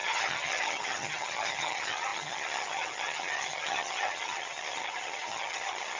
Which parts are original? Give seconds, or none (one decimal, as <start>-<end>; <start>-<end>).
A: none

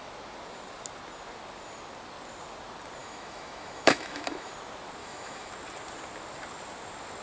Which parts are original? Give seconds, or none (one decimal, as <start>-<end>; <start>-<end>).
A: 0.0-3.0; 4.5-5.0; 5.5-7.2

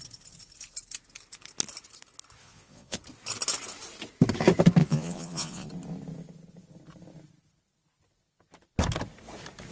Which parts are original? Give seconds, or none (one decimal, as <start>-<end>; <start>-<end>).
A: 0.0-2.4; 3.0-4.8; 5.7-9.7

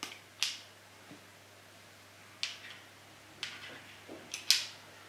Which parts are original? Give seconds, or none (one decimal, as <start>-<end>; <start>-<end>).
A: 0.0-5.1

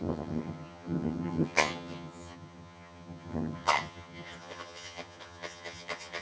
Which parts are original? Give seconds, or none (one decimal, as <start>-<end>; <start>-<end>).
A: none

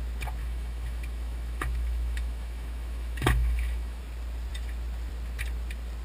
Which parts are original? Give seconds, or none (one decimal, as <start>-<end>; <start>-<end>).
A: 0.0-0.4; 4.0-6.0